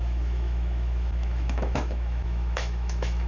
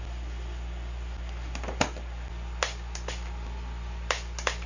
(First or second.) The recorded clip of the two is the second